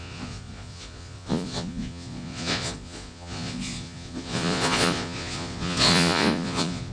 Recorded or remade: remade